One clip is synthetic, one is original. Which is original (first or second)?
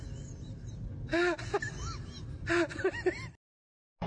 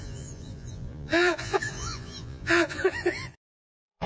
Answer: first